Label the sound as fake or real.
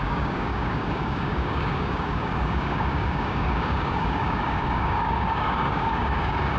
fake